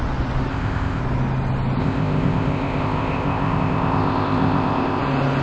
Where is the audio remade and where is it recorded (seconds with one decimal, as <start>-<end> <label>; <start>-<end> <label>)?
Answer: 0.0-0.5 recorded; 0.5-1.0 remade; 1.0-1.8 recorded; 1.8-5.0 remade; 5.0-5.4 recorded